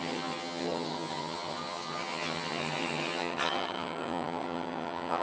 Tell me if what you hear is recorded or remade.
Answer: remade